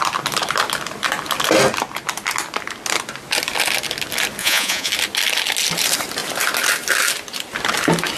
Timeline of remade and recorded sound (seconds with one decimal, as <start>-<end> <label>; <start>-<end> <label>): 0.0-4.4 recorded; 4.4-4.9 remade; 4.9-8.2 recorded